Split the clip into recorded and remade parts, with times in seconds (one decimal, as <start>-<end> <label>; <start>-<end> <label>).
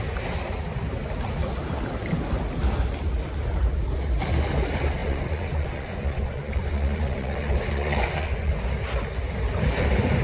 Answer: 0.0-5.0 recorded; 5.0-8.6 remade; 8.6-10.2 recorded